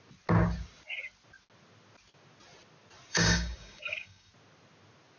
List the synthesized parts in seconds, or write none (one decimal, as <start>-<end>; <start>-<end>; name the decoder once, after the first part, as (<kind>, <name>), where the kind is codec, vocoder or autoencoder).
3.1-4.3 (codec, DAC)